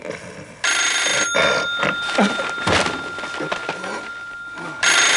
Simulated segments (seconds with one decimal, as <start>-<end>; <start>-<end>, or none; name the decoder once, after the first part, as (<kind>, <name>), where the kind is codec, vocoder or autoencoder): none